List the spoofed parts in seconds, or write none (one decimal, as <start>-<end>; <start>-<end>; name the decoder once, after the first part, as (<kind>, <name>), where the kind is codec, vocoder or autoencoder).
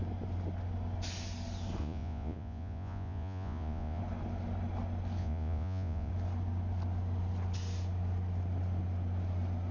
1.8-4.0 (vocoder, Vocos); 5.2-6.1